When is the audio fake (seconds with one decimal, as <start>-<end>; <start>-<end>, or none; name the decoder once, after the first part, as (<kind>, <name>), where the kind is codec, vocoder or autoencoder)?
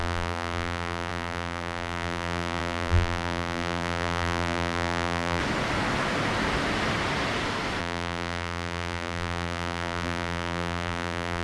0.0-5.4 (vocoder, BigVGAN v2); 7.8-11.4